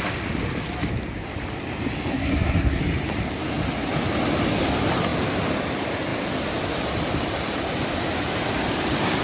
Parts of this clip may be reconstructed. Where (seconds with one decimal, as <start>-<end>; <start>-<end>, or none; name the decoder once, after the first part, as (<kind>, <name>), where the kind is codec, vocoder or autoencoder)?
2.1-2.8 (codec, SNAC)